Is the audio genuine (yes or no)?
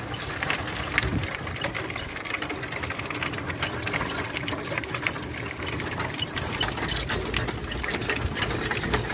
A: yes